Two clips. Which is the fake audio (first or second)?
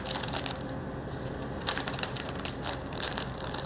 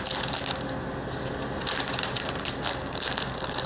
first